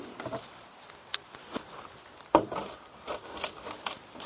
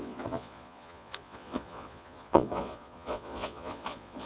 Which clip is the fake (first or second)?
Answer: second